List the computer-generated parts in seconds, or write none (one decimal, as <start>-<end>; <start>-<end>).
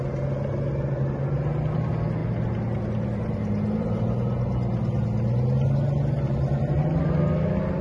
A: none